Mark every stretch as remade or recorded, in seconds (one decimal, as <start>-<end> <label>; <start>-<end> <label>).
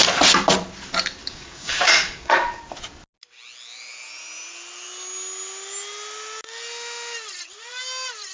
0.0-1.2 recorded; 1.2-2.6 remade; 2.6-8.3 recorded